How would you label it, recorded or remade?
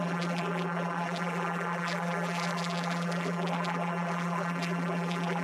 remade